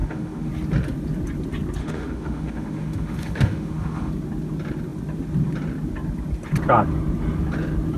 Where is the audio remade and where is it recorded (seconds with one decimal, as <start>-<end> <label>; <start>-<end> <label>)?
0.0-0.5 remade; 0.5-1.8 recorded; 1.8-4.1 remade; 4.1-8.0 recorded

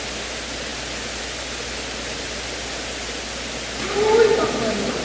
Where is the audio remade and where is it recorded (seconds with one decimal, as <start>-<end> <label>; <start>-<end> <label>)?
0.0-5.0 recorded

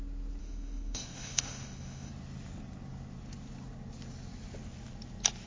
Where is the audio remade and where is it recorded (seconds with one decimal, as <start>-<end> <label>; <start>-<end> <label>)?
0.0-0.4 recorded; 0.4-2.1 remade; 2.1-5.5 recorded

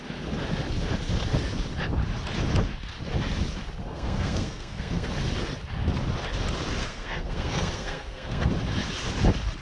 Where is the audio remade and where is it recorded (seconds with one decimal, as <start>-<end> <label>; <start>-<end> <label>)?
0.0-3.8 recorded; 3.8-5.1 remade; 5.1-6.8 recorded; 6.8-8.5 remade; 8.5-9.6 recorded

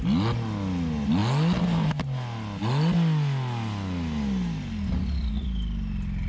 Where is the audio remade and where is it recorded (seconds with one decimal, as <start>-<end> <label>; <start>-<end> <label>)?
0.0-6.3 recorded